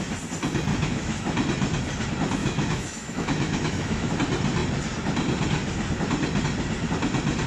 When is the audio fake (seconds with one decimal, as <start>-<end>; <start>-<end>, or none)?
0.7-1.2; 2.4-4.1